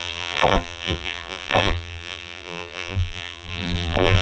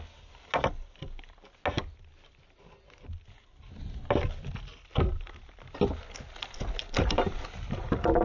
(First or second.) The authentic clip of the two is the second